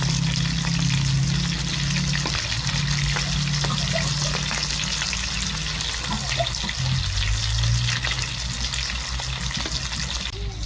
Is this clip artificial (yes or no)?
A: no